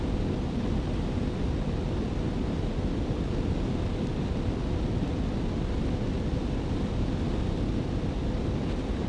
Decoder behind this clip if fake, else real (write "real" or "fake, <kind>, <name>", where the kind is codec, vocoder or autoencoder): real